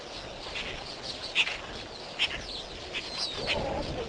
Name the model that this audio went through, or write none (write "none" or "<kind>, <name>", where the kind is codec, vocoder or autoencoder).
none